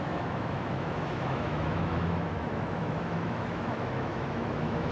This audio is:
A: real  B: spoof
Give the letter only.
B